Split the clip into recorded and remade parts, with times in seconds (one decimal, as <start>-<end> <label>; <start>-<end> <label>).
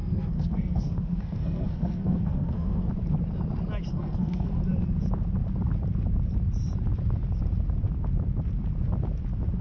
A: 0.0-2.9 remade; 2.9-3.9 recorded; 3.9-4.5 remade; 4.5-9.6 recorded